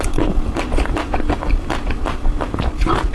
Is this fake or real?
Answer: real